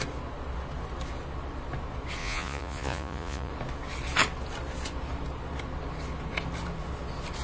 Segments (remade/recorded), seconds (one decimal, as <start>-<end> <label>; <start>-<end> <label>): 0.0-2.2 recorded; 2.2-3.5 remade; 3.5-7.4 recorded